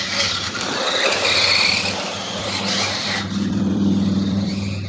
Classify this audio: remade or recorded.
remade